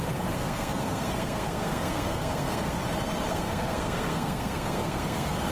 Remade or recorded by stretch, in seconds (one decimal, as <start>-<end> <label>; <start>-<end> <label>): 0.0-2.8 remade; 2.8-3.3 recorded; 3.3-5.5 remade

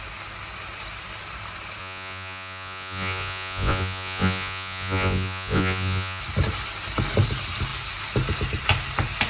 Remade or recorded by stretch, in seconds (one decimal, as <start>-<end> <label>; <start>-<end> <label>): 0.0-1.8 recorded; 1.8-6.2 remade; 6.2-9.3 recorded

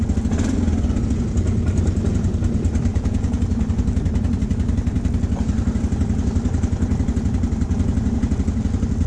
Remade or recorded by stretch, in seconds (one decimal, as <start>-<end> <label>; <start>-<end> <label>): 0.0-2.9 recorded; 2.9-3.4 remade; 3.4-9.1 recorded

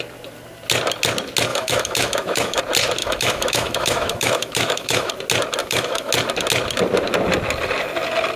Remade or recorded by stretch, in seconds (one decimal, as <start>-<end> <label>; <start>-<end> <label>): 0.0-1.5 recorded; 1.5-2.6 remade; 2.6-3.0 recorded; 3.0-5.1 remade; 5.1-5.6 recorded; 5.6-6.1 remade; 6.1-8.4 recorded

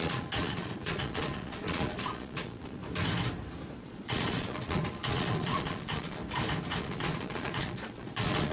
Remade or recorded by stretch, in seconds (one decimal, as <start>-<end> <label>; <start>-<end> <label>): 0.0-2.8 remade; 2.8-3.8 recorded; 3.8-6.2 remade; 6.2-6.8 recorded; 6.8-8.5 remade

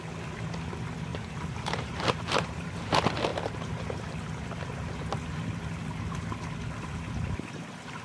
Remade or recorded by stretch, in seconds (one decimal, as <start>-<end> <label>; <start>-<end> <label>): 0.0-1.1 recorded; 1.1-2.8 remade; 2.8-8.0 recorded

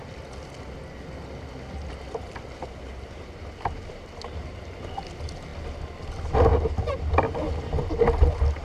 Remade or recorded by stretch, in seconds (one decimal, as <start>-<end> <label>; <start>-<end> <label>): 0.0-2.6 recorded; 2.6-4.6 remade; 4.6-6.5 recorded; 6.5-7.1 remade; 7.1-8.6 recorded

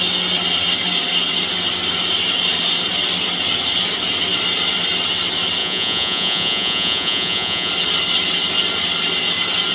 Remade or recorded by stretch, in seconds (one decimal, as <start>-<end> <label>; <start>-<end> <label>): 0.0-5.6 recorded; 5.6-7.7 remade; 7.7-9.7 recorded